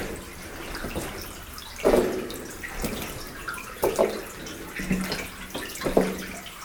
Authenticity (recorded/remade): recorded